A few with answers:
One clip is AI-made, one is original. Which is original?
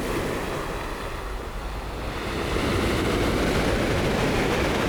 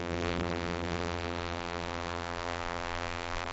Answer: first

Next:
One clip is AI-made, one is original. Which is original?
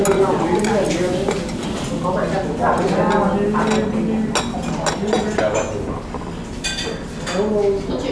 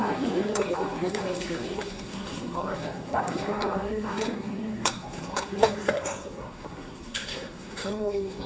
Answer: first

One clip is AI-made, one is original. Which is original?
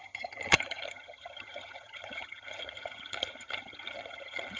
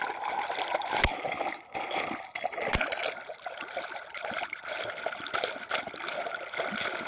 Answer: second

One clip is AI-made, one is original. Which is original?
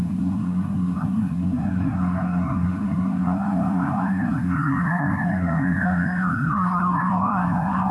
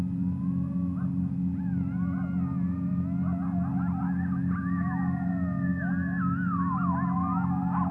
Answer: second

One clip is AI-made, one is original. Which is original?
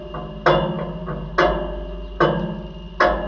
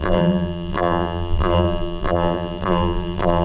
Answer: first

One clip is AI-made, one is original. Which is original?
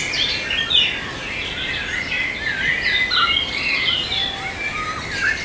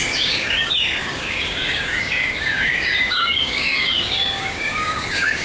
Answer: first